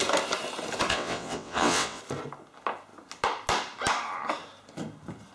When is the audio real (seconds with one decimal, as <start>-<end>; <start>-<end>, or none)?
0.0-0.9; 2.0-5.3